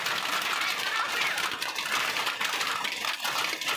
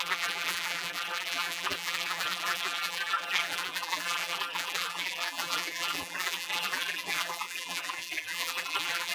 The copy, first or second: second